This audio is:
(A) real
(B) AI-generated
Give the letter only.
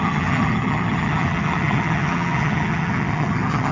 B